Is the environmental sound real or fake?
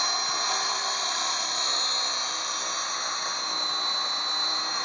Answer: real